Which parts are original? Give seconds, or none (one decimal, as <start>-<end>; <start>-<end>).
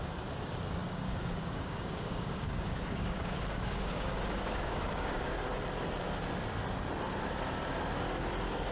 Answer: 0.0-0.8; 5.3-8.7